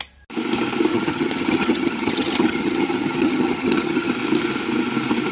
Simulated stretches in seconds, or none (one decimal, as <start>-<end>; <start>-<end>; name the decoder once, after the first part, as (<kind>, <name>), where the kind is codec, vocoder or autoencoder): 0.9-4.1 (vocoder, HiFi-GAN)